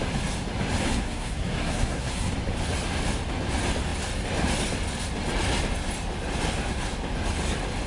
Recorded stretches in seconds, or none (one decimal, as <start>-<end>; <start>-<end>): 0.0-0.8; 2.3-7.9